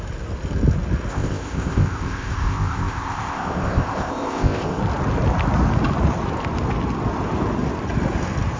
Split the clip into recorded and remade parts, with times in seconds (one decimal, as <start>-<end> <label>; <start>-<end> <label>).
0.0-1.1 recorded; 1.1-4.8 remade; 4.8-8.6 recorded